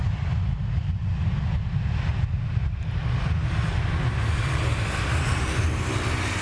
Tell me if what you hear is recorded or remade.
recorded